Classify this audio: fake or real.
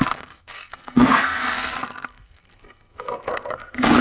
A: fake